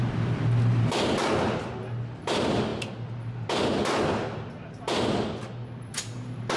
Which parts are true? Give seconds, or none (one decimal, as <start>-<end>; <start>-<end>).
0.0-6.6